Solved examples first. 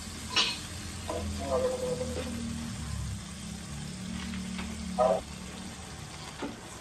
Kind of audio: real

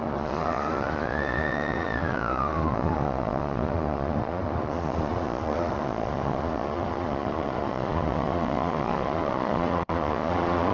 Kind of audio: fake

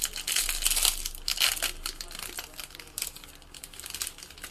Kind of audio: real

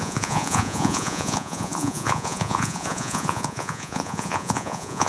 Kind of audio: fake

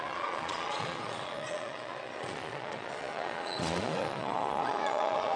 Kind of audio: fake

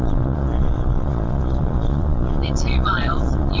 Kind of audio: fake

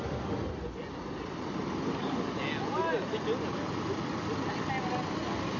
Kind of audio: real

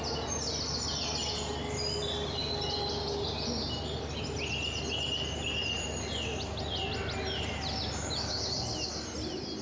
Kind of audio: real